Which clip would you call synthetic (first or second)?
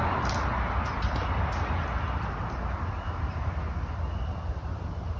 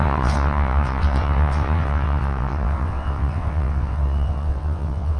second